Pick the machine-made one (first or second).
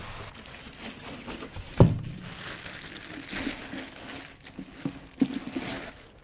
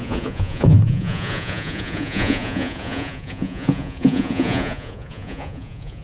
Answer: second